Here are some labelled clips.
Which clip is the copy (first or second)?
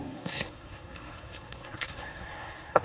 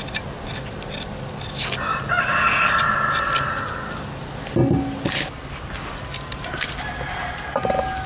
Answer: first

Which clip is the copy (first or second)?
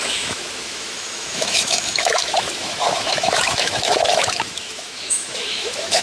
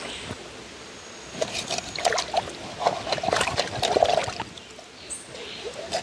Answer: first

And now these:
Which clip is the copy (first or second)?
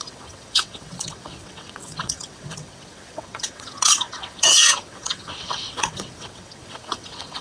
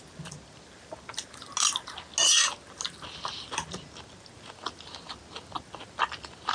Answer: first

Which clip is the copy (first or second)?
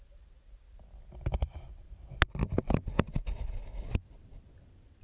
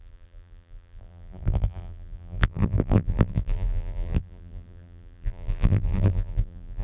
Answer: second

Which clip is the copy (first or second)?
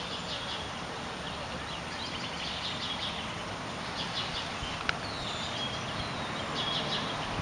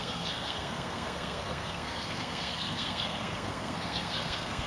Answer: second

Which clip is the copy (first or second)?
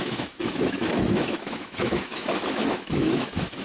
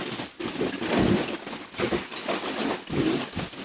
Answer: first